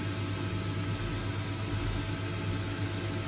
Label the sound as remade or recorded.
recorded